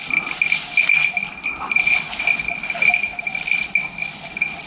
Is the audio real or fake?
real